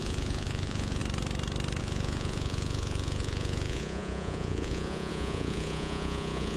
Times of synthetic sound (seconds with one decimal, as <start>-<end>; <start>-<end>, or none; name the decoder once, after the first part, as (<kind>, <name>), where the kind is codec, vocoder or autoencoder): 0.0-1.0 (vocoder, Vocos); 1.8-6.6